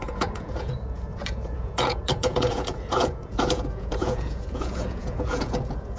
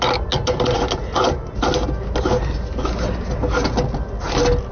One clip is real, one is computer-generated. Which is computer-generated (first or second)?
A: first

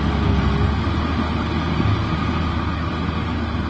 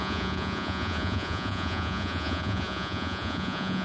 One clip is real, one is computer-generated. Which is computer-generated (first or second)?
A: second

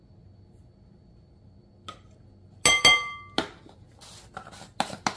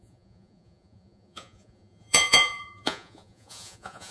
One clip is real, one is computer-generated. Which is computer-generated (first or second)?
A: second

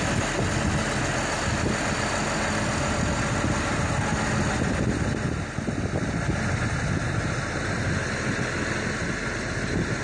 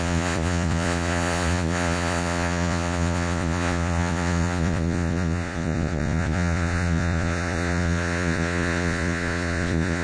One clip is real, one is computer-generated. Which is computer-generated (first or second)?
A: second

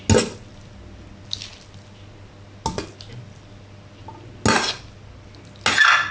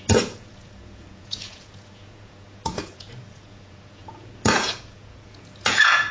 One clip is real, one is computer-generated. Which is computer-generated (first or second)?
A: second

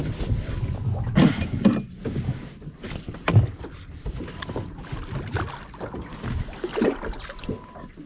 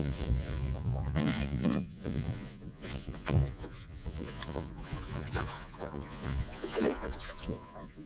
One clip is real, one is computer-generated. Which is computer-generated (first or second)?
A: second